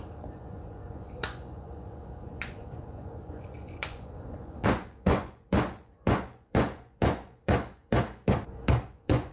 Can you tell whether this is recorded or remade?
remade